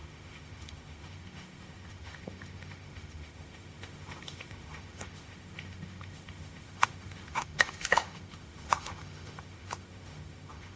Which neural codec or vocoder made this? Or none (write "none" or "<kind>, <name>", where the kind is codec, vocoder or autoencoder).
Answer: autoencoder, DAC-VAE